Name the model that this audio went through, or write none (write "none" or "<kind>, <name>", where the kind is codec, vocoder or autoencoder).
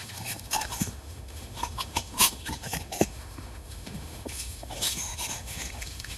autoencoder, DAC-VAE